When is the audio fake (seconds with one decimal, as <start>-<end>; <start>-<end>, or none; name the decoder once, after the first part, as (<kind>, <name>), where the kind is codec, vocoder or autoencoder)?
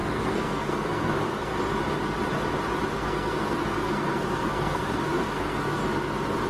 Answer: 0.0-1.5 (codec, SNAC); 2.9-5.8